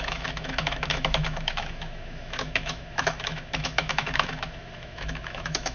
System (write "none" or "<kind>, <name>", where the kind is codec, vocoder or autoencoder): autoencoder, DAC-VAE